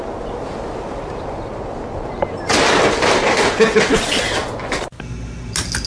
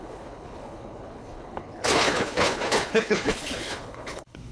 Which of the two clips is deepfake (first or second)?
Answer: second